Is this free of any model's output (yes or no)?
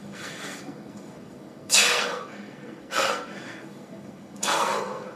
no